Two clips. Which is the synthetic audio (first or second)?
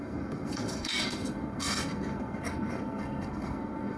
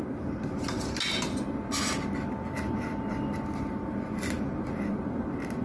first